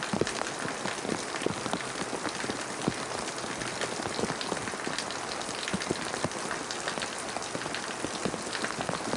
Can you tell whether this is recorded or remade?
recorded